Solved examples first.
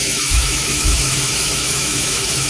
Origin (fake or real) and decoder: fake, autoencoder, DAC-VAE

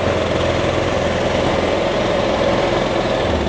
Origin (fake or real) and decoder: real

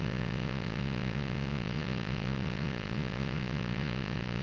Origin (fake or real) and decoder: fake, vocoder, Vocos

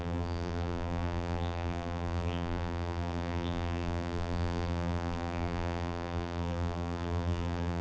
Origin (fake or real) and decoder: fake, vocoder, BigVGAN v2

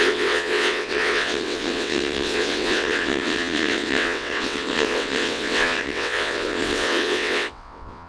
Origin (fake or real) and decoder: fake, vocoder, WaveNeXt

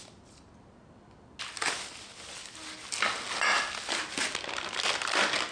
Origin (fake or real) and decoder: real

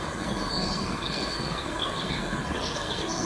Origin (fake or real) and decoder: fake, codec, SNAC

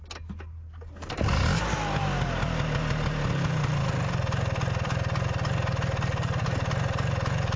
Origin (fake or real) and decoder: real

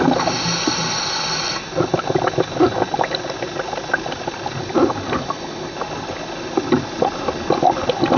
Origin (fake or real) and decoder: real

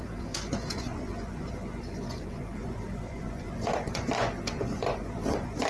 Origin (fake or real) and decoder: fake, vocoder, Vocos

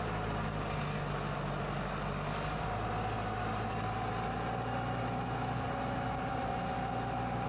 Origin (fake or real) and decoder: real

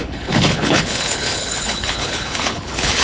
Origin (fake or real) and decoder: fake, codec, HILCodec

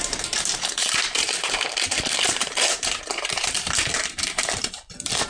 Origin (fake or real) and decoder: fake, vocoder, BigVGAN v2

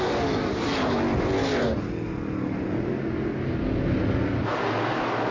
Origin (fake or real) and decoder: real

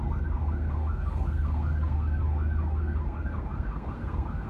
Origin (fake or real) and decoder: fake, codec, SNAC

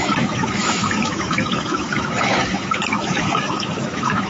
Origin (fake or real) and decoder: fake, autoencoder, DAC-VAE